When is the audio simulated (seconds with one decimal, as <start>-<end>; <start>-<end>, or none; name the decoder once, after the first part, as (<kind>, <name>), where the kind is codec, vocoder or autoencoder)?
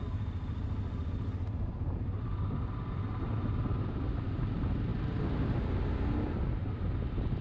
none